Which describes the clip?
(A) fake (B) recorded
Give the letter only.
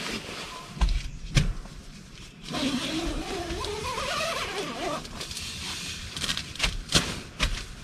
A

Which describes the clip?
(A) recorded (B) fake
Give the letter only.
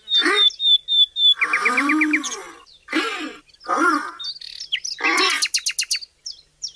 A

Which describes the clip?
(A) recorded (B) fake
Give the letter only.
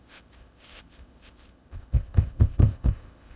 B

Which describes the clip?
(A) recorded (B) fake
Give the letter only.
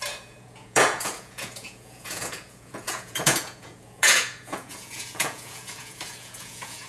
B